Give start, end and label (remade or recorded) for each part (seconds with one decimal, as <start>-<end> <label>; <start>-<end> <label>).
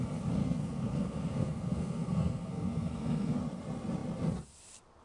0.0-0.4 recorded; 0.4-3.4 remade; 3.4-5.0 recorded